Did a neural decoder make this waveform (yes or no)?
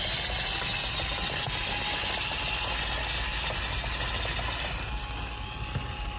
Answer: no